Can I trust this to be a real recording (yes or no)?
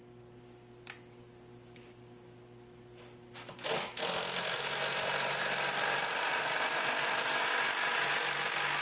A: yes